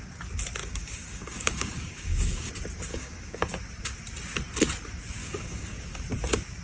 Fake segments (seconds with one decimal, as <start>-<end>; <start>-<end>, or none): 0.6-2.5; 2.9-3.5; 5.2-6.0